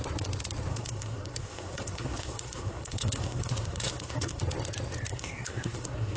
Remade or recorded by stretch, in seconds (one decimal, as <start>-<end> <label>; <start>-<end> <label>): 0.0-0.7 recorded; 0.7-4.4 remade; 4.4-5.1 recorded; 5.1-6.2 remade